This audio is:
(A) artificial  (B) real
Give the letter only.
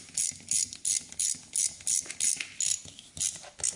B